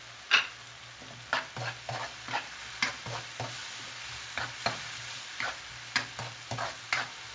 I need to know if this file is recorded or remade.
recorded